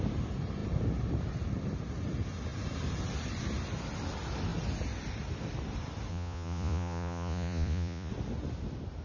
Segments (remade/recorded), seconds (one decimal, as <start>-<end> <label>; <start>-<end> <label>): 0.0-6.1 recorded; 6.1-8.1 remade; 8.1-9.0 recorded